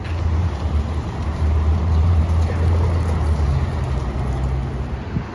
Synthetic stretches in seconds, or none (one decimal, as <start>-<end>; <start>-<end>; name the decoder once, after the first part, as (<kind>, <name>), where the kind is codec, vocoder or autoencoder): 0.4-2.2 (vocoder, BigVGAN v2)